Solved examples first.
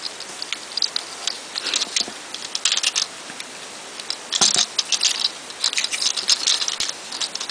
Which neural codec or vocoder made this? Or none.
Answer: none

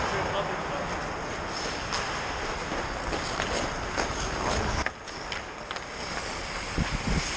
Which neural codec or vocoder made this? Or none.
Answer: none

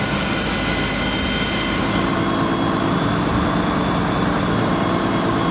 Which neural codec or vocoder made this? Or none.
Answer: none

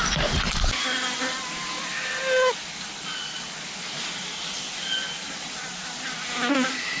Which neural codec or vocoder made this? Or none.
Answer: none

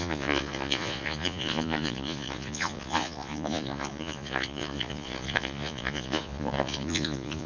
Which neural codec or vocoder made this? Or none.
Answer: vocoder, Vocos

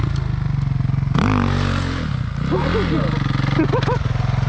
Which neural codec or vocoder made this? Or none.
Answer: none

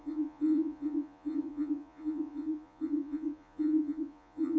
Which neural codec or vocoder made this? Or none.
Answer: vocoder, Vocos